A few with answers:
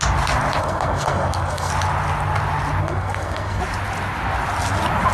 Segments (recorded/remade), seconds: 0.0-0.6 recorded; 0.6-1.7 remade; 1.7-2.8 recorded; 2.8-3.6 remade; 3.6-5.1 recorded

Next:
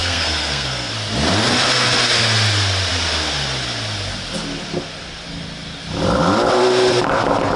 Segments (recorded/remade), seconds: 0.0-0.9 remade; 0.9-7.6 recorded

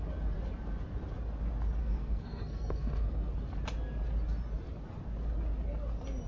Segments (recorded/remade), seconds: 0.0-1.8 recorded; 1.8-3.3 remade; 3.3-6.3 recorded

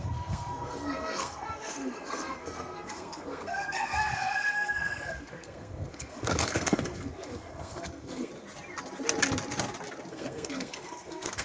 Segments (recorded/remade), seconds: 0.0-8.3 remade; 8.3-10.1 recorded; 10.1-11.4 remade

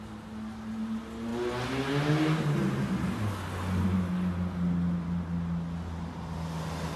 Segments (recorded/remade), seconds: 0.0-7.0 recorded

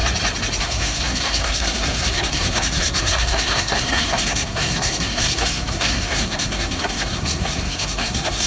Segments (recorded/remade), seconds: 0.0-0.6 recorded; 0.6-8.5 remade

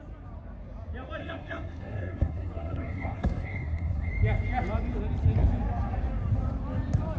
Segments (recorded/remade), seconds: 0.0-1.2 recorded; 1.2-4.1 remade; 4.1-7.2 recorded

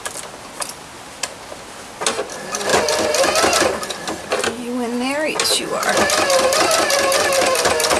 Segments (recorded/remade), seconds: 0.0-8.0 recorded